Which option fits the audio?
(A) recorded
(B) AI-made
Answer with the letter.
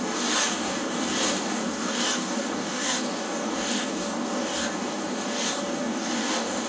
B